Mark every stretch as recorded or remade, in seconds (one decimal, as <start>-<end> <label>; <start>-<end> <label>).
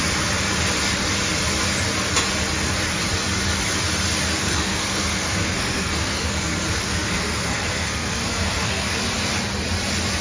0.0-4.3 recorded; 4.3-9.0 remade; 9.0-10.2 recorded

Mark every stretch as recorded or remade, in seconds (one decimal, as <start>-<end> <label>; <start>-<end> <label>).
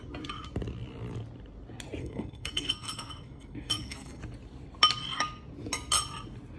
0.0-2.0 recorded; 2.0-4.2 remade; 4.2-6.6 recorded